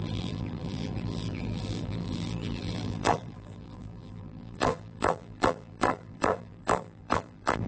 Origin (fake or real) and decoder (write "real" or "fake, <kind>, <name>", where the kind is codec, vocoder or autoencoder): fake, vocoder, BigVGAN v2